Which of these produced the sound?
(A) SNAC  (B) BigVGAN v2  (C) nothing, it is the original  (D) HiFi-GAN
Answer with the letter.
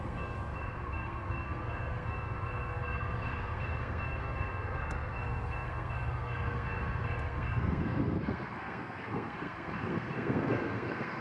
A